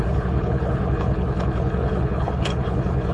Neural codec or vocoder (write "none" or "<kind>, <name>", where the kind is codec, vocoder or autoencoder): codec, HILCodec